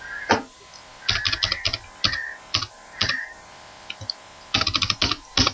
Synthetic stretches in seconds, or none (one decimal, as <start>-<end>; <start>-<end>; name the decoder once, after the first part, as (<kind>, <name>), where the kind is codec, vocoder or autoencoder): none